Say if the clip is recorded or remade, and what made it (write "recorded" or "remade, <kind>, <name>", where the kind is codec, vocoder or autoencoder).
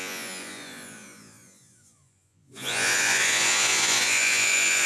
remade, vocoder, Vocos